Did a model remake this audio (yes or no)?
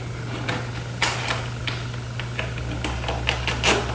no